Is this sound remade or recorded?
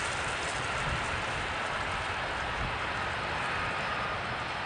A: recorded